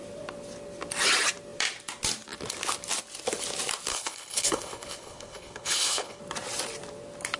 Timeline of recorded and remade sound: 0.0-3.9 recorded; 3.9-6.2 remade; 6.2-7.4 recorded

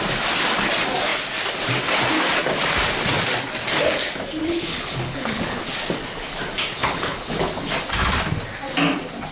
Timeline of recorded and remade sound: 0.0-4.4 recorded; 4.4-5.6 remade; 5.6-6.8 recorded; 6.8-7.6 remade; 7.6-9.3 recorded

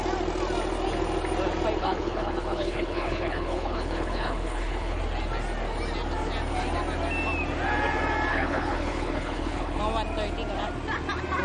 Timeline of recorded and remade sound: 0.0-1.8 recorded; 1.8-5.0 remade; 5.0-8.3 recorded; 8.3-9.8 remade; 9.8-11.4 recorded